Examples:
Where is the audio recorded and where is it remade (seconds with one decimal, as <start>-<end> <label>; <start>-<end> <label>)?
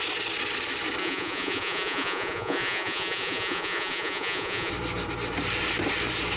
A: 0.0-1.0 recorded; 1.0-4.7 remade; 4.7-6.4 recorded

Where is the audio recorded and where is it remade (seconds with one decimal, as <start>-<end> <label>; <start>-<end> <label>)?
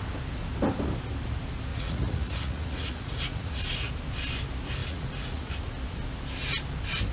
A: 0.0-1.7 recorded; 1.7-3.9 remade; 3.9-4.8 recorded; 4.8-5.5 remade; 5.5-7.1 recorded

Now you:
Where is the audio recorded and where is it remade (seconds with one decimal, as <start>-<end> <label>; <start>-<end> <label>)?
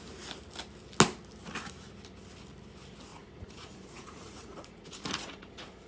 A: 0.0-3.1 recorded; 3.1-5.9 remade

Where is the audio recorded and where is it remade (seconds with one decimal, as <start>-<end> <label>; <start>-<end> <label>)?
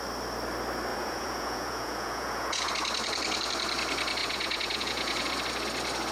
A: 0.0-0.9 recorded; 0.9-2.7 remade; 2.7-4.2 recorded; 4.2-5.3 remade; 5.3-6.1 recorded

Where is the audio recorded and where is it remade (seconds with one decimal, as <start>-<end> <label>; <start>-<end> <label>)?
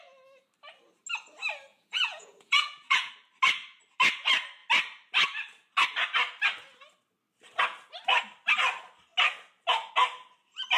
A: 0.0-1.7 recorded; 1.7-3.1 remade; 3.1-10.8 recorded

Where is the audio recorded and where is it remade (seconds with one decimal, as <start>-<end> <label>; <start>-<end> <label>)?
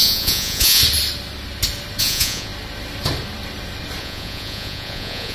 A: 0.0-0.8 remade; 0.8-2.0 recorded; 2.0-2.5 remade; 2.5-4.0 recorded; 4.0-5.3 remade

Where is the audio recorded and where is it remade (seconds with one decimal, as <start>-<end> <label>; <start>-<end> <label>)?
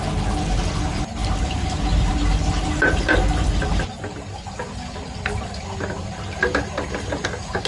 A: 0.0-7.7 recorded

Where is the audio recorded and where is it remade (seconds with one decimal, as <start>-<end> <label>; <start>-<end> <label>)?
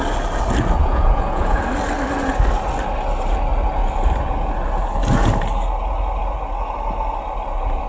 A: 0.0-0.8 recorded; 0.8-1.6 remade; 1.6-7.9 recorded